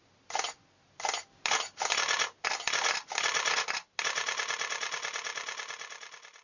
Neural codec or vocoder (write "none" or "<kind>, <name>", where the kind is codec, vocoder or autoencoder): none